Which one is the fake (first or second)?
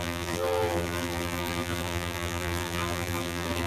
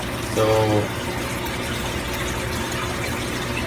first